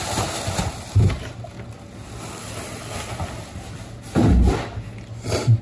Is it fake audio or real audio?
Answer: real